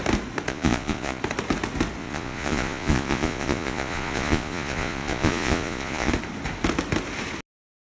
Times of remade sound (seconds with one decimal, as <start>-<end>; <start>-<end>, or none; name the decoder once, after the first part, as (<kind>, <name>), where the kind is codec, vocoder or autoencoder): 0.5-1.2 (vocoder, Vocos); 2.0-6.1